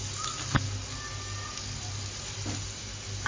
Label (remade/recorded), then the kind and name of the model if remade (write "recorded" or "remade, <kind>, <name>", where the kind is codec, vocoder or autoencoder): recorded